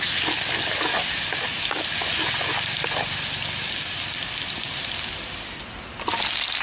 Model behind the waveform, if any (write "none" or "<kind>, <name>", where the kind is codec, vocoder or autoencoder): none